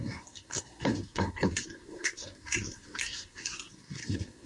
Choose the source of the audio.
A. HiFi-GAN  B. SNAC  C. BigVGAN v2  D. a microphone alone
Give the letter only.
B